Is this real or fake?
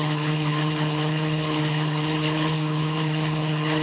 fake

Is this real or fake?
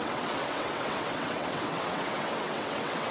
fake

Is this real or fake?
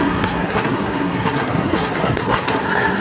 fake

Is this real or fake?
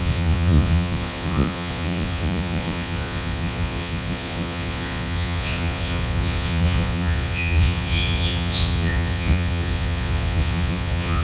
fake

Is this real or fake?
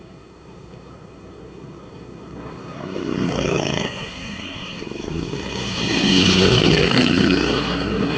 fake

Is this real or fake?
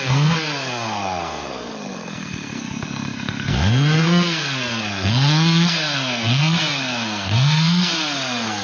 fake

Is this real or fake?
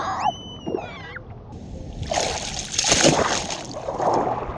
real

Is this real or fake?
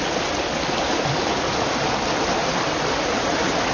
real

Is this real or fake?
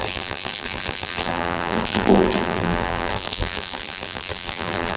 fake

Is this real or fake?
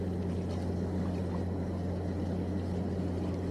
real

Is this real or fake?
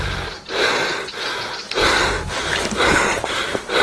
real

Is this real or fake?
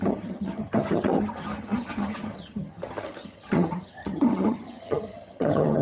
fake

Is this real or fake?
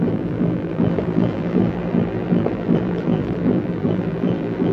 fake